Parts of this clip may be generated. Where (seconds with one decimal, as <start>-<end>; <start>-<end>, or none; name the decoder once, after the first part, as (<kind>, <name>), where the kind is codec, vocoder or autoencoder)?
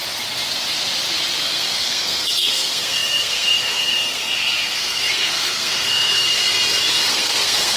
1.4-6.4 (codec, SNAC); 7.1-7.8